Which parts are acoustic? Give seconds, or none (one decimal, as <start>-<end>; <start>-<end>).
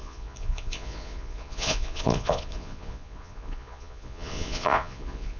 none